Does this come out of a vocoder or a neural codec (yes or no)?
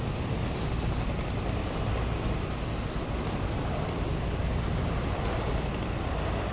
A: no